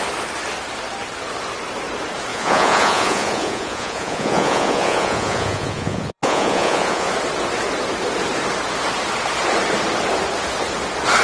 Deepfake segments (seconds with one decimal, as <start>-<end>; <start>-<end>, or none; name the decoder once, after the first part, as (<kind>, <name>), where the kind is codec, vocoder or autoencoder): 2.3-7.1 (vocoder, Vocos)